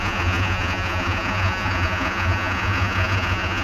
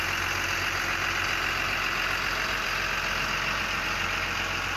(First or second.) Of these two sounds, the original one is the second